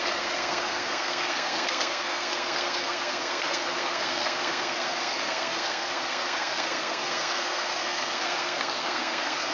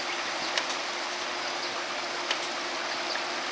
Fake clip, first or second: first